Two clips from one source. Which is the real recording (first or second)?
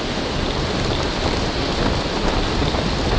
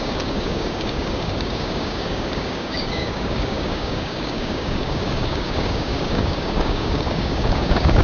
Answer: first